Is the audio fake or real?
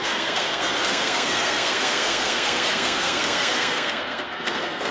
fake